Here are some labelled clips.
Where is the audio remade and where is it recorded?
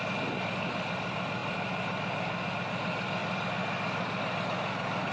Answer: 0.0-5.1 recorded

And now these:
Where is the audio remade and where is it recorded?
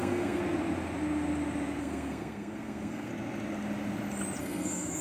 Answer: 0.0-0.4 remade; 0.4-1.8 recorded; 1.8-3.1 remade; 3.1-4.4 recorded; 4.4-5.0 remade